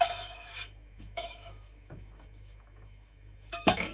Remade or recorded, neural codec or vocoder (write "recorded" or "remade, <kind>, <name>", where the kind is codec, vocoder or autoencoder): remade, autoencoder, DAC-VAE